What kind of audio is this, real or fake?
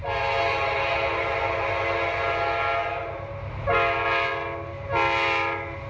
real